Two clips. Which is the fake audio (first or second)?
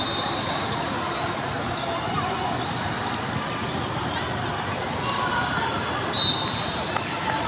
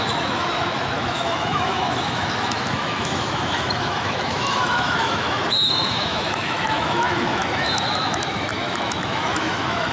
second